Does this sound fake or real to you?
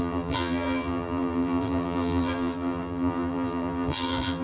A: fake